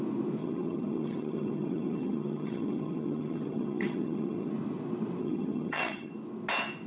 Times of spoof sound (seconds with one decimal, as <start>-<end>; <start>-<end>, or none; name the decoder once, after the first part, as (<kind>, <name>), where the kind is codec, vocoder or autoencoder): 0.4-4.5 (vocoder, HiFi-GAN); 5.2-6.1

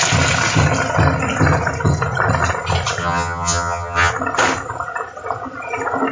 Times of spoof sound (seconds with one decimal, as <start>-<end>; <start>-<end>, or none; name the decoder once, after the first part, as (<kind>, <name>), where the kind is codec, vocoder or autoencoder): 3.0-4.1 (vocoder, HiFi-GAN)

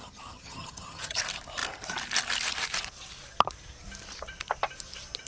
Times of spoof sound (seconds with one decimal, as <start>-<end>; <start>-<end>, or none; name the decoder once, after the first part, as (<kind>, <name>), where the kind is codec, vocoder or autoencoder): 0.0-1.2 (vocoder, HiFi-GAN)

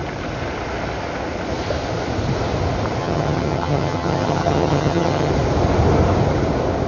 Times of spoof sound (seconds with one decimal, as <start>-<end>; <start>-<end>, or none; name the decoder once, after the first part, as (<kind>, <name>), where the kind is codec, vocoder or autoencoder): 3.0-5.3 (vocoder, HiFi-GAN)

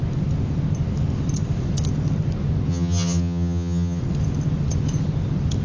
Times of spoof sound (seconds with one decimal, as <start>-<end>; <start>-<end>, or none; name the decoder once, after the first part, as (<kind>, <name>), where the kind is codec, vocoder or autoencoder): 2.7-4.0 (vocoder, HiFi-GAN)

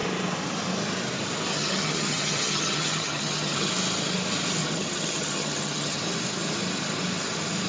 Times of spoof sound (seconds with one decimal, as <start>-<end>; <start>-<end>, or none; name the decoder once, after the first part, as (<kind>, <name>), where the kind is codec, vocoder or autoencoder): 1.5-3.7 (vocoder, HiFi-GAN); 4.6-6.0

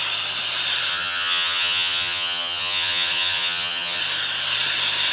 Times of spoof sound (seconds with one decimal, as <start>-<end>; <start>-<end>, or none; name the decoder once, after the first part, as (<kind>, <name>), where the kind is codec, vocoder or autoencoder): 0.9-4.0 (vocoder, HiFi-GAN)